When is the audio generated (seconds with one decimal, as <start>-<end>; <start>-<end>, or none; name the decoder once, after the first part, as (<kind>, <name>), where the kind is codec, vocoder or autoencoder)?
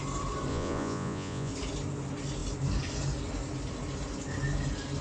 0.5-1.5 (vocoder, Vocos)